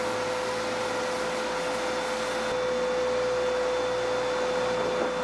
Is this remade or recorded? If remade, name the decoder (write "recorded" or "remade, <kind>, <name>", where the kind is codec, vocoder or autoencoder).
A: recorded